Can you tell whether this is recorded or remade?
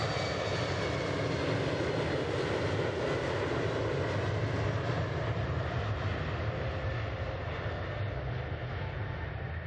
recorded